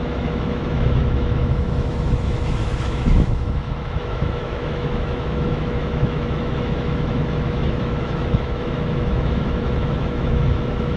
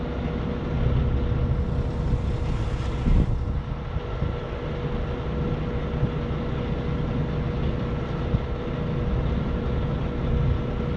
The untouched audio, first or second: second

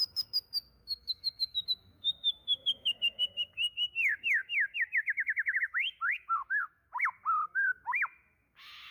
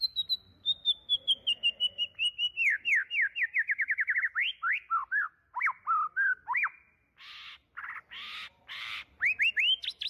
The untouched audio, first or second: second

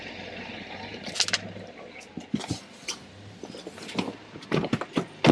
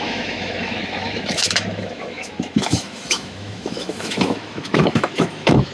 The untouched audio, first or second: first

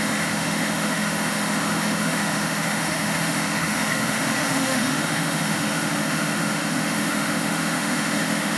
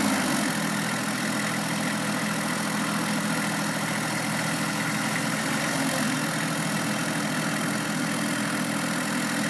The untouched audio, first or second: second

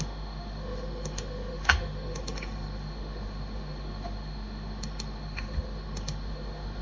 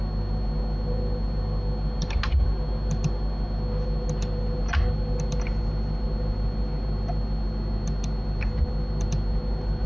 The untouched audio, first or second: second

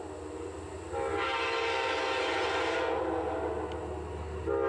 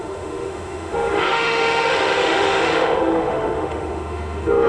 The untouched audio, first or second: first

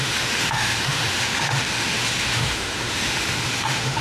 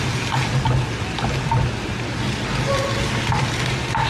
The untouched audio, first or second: second